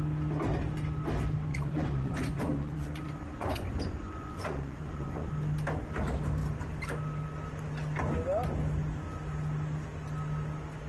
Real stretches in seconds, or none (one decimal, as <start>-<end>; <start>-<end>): 0.0-1.5; 5.3-10.9